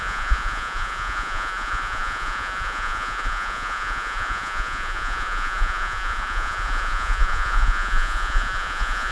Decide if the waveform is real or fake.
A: fake